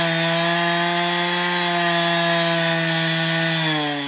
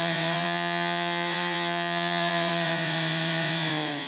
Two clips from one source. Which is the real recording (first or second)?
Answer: first